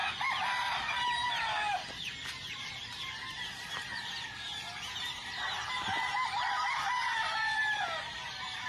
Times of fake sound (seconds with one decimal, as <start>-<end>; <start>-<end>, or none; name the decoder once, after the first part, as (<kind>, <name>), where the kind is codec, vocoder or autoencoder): none